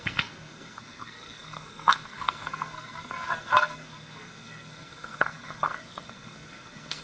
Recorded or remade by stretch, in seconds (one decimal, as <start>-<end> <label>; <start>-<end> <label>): 0.0-7.0 remade